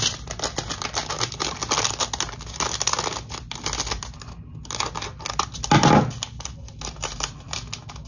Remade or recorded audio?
recorded